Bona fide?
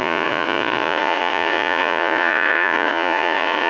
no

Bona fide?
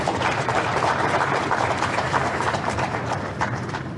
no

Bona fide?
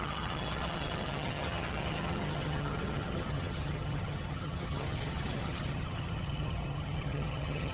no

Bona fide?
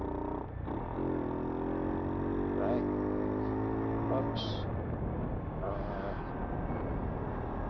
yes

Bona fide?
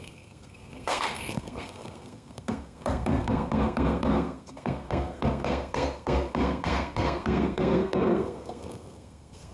no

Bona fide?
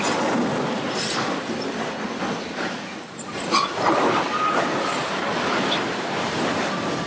yes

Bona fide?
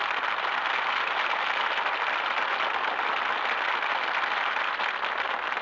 yes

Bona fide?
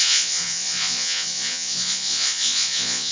no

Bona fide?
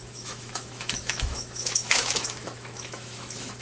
no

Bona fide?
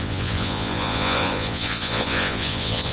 no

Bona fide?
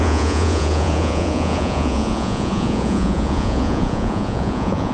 no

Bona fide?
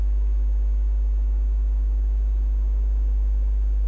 yes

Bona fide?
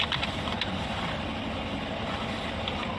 yes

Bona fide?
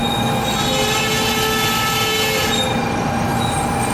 yes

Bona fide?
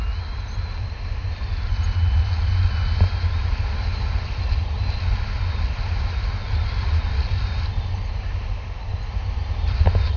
yes